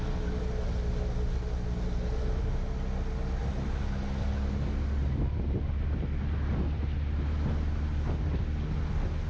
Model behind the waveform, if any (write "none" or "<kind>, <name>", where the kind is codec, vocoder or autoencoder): none